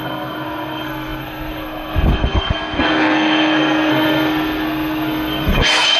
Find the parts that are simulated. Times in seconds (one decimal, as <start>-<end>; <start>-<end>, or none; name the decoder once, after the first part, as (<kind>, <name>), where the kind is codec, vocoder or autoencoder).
0.0-6.0 (codec, SNAC)